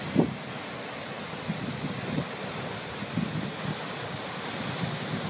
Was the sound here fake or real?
real